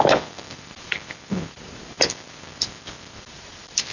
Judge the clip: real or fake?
fake